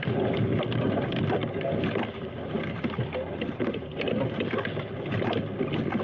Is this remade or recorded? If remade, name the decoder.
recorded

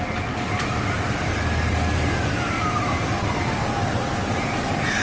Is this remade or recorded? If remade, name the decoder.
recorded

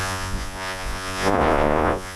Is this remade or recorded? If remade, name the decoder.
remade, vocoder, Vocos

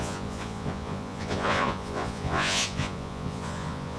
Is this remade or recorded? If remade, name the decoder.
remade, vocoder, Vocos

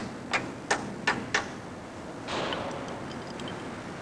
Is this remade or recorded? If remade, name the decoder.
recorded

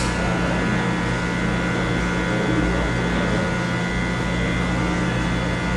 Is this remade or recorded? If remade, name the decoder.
recorded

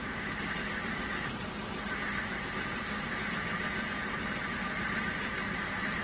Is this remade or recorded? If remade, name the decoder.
recorded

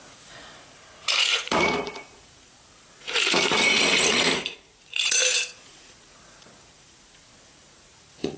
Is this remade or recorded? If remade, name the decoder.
remade, vocoder, Vocos